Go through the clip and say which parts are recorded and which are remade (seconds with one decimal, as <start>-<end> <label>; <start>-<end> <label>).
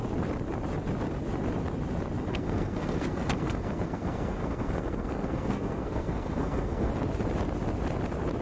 0.0-2.3 recorded; 2.3-6.9 remade; 6.9-8.4 recorded